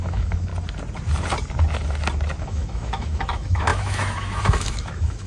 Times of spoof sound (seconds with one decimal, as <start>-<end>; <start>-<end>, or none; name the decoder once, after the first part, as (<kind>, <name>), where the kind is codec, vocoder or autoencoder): 0.0-0.5 (autoencoder, DAC-VAE); 2.4-5.3